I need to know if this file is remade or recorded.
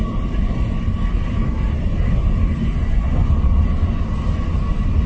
recorded